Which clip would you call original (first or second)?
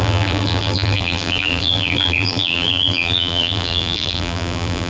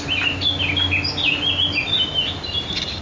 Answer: second